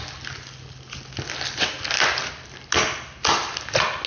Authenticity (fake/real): real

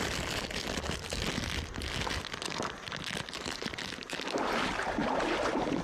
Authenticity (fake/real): real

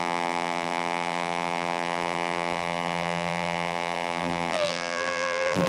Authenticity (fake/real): fake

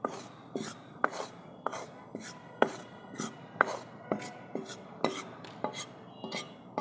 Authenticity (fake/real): real